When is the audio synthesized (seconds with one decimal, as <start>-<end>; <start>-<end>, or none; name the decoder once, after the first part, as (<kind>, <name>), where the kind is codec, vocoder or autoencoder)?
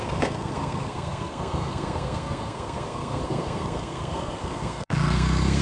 0.0-5.6 (codec, SNAC)